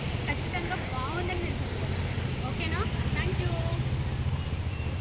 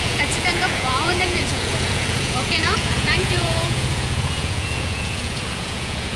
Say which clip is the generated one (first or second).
second